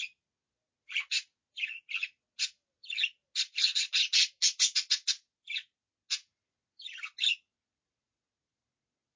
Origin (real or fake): real